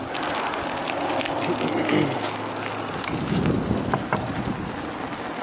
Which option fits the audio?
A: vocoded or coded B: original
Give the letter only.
B